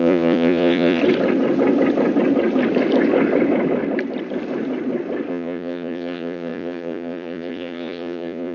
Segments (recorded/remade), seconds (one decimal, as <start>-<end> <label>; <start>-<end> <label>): 0.0-1.0 remade; 1.0-5.3 recorded; 5.3-8.5 remade